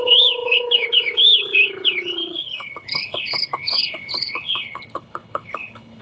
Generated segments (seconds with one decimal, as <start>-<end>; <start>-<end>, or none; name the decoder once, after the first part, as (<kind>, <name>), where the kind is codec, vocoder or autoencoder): 0.0-6.0 (codec, HILCodec)